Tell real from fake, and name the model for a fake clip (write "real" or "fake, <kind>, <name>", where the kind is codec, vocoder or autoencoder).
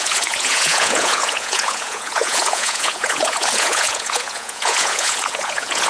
fake, vocoder, Vocos